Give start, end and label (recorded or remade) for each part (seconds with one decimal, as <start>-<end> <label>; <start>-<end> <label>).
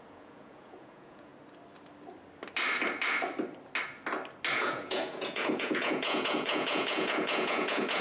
0.0-1.3 remade; 1.3-4.5 recorded; 4.5-8.0 remade